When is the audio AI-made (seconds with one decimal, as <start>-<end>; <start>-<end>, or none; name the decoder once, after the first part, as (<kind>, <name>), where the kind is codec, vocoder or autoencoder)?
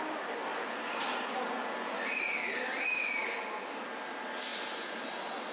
none